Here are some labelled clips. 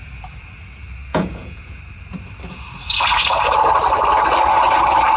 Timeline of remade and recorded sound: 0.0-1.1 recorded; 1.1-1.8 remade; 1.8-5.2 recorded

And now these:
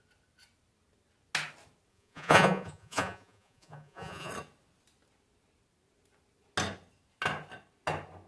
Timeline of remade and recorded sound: 0.0-1.9 recorded; 1.9-4.3 remade; 4.3-8.3 recorded